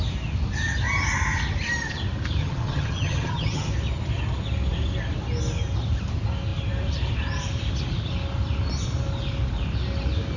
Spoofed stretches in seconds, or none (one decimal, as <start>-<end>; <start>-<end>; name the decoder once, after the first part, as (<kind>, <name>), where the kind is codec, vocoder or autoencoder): 2.4-3.7 (vocoder, HiFi-GAN)